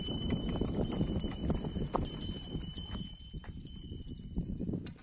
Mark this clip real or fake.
fake